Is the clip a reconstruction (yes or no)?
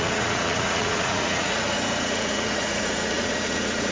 yes